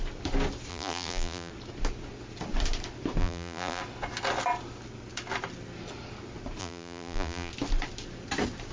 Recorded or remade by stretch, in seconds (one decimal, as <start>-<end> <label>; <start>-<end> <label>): 0.0-0.7 recorded; 0.7-1.5 remade; 1.5-3.2 recorded; 3.2-3.8 remade; 3.8-6.6 recorded; 6.6-7.5 remade; 7.5-8.7 recorded